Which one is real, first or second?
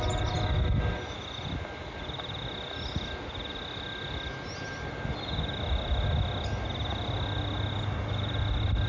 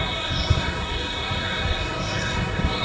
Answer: first